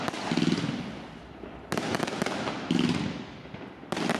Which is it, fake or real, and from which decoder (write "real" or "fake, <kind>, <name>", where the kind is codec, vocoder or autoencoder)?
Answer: real